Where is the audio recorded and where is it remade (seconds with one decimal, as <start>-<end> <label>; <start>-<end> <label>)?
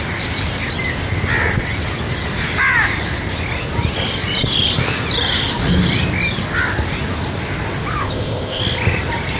0.0-8.0 recorded; 8.0-8.6 remade; 8.6-9.4 recorded